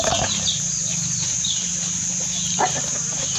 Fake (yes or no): no